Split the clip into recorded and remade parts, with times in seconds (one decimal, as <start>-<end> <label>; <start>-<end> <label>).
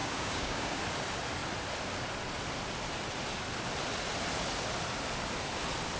0.0-0.8 remade; 0.8-6.0 recorded